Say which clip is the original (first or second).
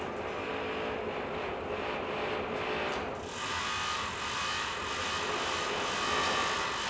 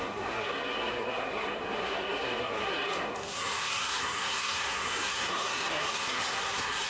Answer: first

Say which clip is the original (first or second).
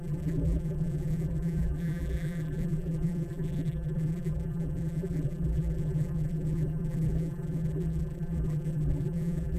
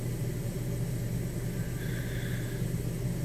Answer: second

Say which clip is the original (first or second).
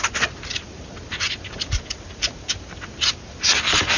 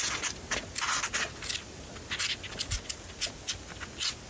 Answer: second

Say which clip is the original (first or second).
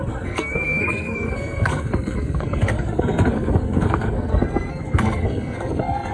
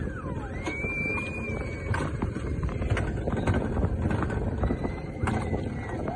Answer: second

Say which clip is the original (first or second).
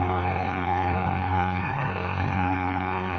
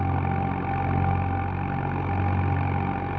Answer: second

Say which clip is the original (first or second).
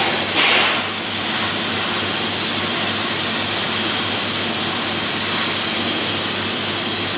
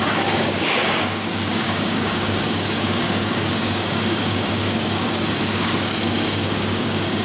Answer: first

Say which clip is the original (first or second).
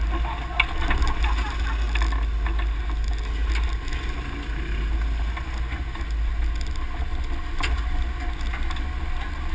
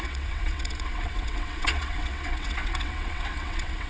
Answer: first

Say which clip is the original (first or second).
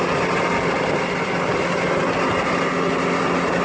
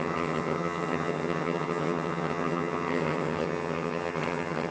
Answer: first